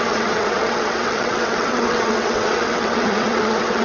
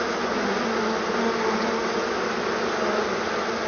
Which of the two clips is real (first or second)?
second